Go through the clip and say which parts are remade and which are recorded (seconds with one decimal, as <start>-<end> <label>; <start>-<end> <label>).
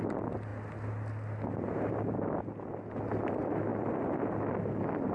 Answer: 0.0-5.1 recorded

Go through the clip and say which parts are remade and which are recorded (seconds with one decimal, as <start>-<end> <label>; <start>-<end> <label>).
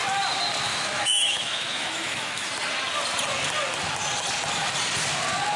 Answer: 0.0-0.7 recorded; 0.7-2.5 remade; 2.5-5.6 recorded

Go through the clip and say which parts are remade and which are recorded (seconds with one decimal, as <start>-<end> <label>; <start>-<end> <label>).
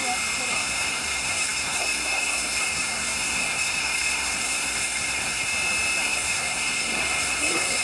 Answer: 0.0-0.5 recorded; 0.5-5.5 remade; 5.5-6.0 recorded; 6.0-7.8 remade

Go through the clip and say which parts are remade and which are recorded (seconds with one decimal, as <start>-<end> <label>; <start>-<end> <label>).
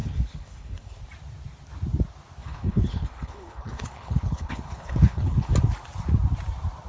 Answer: 0.0-1.0 remade; 1.0-2.4 recorded; 2.4-5.5 remade; 5.5-6.9 recorded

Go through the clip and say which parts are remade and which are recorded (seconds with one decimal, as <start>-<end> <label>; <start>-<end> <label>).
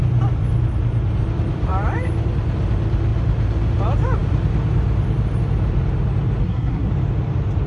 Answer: 0.0-6.4 recorded; 6.4-6.9 remade; 6.9-7.7 recorded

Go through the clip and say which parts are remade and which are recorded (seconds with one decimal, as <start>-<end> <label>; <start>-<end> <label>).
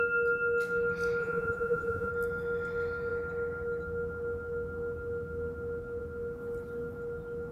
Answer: 0.0-1.2 recorded; 1.2-2.1 remade; 2.1-7.5 recorded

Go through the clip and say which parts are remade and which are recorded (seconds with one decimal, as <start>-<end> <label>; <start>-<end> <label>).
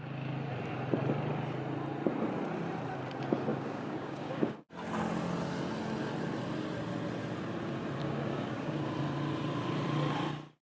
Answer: 0.0-3.5 recorded; 3.5-4.7 remade; 4.7-8.0 recorded; 8.0-8.9 remade; 8.9-10.6 recorded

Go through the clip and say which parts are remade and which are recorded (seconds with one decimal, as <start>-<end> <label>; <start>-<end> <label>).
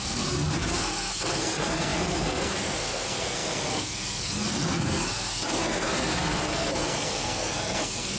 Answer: 0.0-8.2 remade